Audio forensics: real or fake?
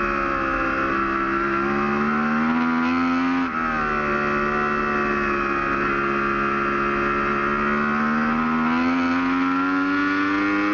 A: real